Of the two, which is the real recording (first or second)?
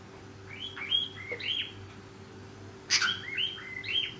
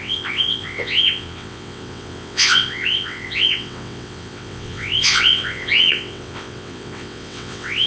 first